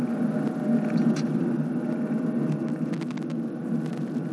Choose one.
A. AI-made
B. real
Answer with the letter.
B